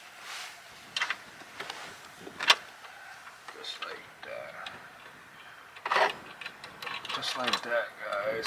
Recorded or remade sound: recorded